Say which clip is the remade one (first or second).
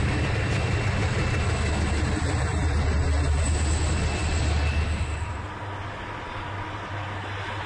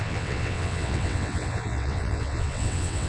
second